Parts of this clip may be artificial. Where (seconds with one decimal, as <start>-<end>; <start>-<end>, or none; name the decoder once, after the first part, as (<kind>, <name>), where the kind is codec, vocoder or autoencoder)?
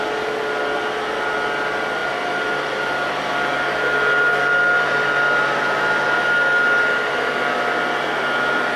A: none